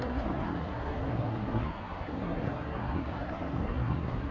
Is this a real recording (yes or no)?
no